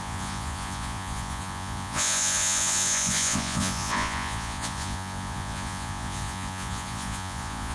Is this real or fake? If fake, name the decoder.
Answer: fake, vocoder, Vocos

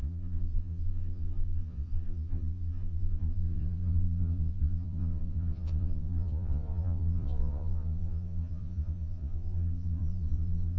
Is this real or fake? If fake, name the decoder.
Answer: fake, vocoder, Vocos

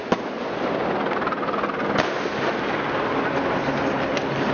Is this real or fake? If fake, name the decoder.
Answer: real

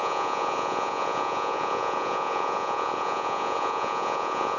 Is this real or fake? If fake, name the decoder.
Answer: fake, vocoder, Vocos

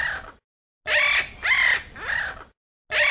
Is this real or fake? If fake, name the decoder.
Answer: real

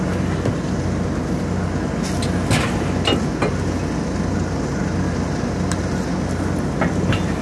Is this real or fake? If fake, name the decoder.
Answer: real